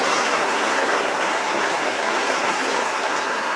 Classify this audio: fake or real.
fake